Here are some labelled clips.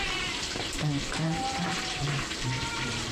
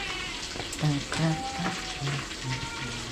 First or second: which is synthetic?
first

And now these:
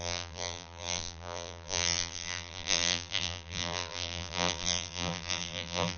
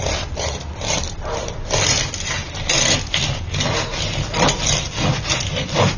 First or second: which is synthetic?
first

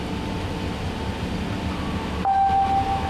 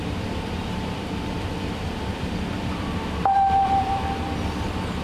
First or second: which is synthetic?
second